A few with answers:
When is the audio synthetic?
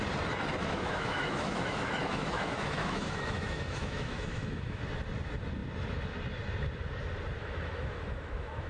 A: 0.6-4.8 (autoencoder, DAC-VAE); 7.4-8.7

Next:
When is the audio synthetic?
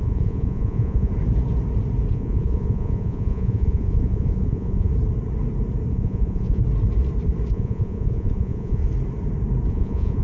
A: 0.0-1.1 (vocoder, Vocos); 2.1-4.9; 5.9-6.6; 7.5-8.8; 9.7-10.2